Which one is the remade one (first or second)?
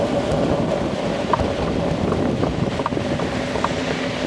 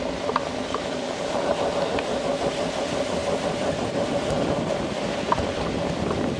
second